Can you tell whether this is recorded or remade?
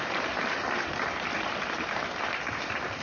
remade